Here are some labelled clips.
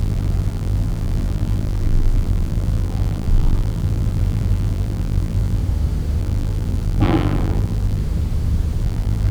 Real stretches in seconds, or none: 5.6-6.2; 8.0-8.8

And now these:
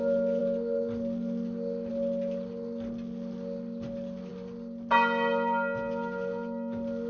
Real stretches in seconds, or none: 0.0-7.1

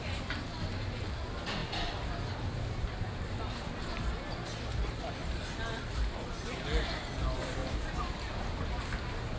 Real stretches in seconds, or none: 0.0-9.4

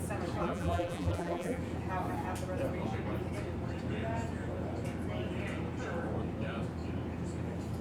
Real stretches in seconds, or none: 0.0-0.4; 1.6-7.8

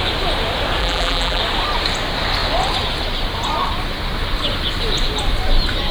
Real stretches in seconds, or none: 0.0-0.8; 1.4-5.9